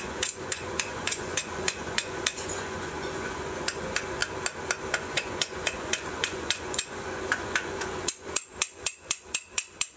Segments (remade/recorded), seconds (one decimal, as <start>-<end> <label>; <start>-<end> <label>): 0.0-4.2 remade; 4.2-4.9 recorded; 4.9-10.0 remade